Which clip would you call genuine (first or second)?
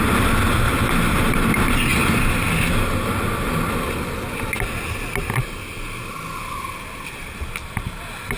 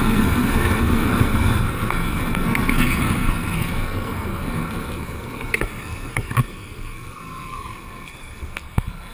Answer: first